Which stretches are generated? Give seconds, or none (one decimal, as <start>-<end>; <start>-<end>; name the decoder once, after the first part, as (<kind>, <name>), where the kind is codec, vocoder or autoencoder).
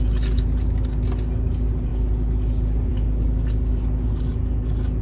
none